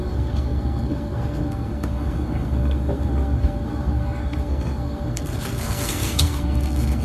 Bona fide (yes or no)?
no